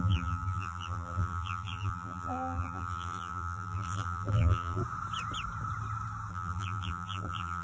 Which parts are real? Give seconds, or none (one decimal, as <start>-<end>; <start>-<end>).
4.8-6.3